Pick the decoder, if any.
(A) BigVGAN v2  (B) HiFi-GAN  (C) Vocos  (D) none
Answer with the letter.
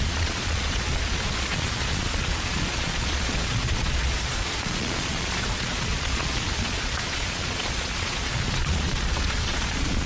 C